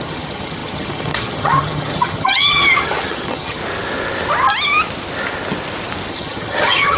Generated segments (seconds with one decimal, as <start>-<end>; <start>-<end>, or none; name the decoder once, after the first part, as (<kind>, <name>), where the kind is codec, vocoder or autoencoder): 0.0-3.6 (vocoder, HiFi-GAN); 6.1-7.0

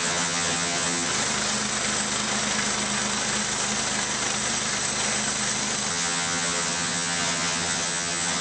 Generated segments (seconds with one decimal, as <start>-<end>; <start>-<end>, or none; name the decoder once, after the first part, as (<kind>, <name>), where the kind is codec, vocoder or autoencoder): 0.0-1.1 (vocoder, HiFi-GAN); 5.9-8.4

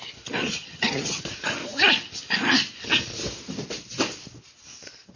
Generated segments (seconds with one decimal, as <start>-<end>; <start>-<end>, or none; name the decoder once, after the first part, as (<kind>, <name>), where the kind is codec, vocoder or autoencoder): 0.4-1.2 (vocoder, HiFi-GAN)

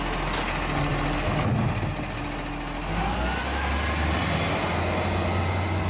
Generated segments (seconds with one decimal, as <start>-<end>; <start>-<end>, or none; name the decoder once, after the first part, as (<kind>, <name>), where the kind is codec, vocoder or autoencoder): none

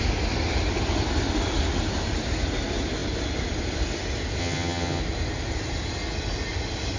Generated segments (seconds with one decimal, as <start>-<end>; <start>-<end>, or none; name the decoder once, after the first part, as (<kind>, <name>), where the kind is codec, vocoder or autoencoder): 4.4-5.0 (vocoder, HiFi-GAN)

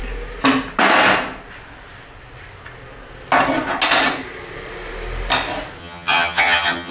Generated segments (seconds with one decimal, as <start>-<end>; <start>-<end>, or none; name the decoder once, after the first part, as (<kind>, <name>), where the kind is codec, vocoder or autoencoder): 5.8-6.9 (vocoder, HiFi-GAN)

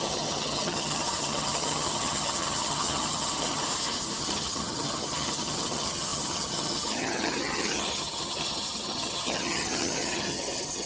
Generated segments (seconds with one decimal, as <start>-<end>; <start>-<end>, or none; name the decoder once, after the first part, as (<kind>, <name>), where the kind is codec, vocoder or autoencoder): 0.0-3.6 (vocoder, HiFi-GAN); 4.2-10.9

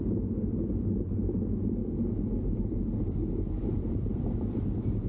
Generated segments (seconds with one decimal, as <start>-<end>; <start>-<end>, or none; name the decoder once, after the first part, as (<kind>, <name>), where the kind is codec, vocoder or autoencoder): none